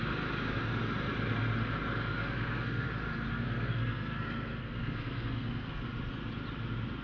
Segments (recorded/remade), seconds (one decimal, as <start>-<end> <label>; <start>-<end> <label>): 0.0-2.1 recorded; 2.1-2.9 remade; 2.9-3.3 recorded; 3.3-5.9 remade; 5.9-7.0 recorded